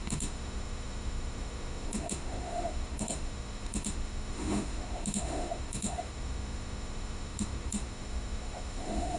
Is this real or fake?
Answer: fake